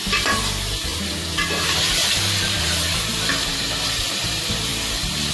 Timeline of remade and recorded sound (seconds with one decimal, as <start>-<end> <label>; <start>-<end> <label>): 0.0-4.7 remade; 4.7-5.3 recorded